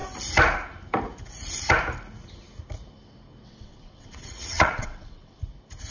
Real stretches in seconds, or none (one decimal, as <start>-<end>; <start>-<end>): 0.0-3.4; 5.4-5.9